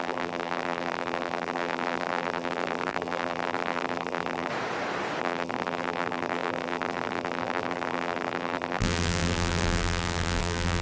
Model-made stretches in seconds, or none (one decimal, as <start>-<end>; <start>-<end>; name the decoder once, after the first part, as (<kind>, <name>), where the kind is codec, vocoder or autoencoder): 0.0-4.5 (vocoder, BigVGAN v2); 5.2-10.8